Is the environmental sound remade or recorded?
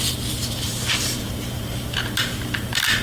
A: remade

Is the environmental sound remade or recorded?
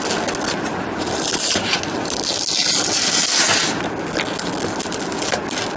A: recorded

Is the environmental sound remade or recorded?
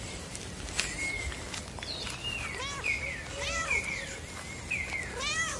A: recorded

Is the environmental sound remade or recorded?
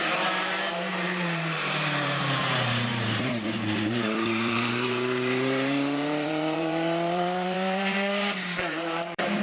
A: remade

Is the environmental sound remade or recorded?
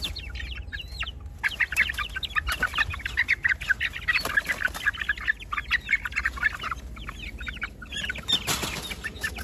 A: recorded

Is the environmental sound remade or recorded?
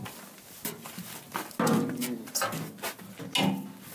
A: recorded